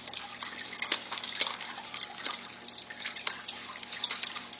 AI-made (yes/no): no